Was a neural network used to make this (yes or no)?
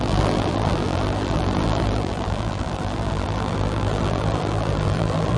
yes